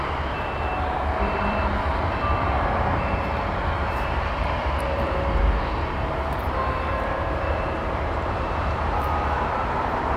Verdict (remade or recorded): remade